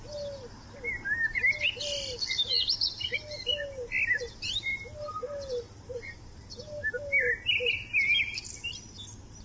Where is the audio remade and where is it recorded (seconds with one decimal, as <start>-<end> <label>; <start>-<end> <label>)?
0.0-9.4 recorded